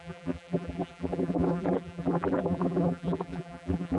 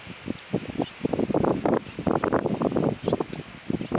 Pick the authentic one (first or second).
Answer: second